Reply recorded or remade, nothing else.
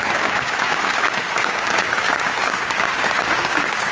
remade